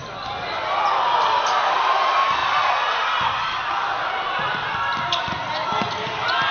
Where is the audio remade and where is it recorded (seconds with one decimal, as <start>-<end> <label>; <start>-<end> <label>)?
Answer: 0.0-6.5 recorded